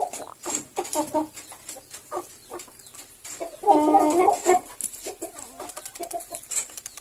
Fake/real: real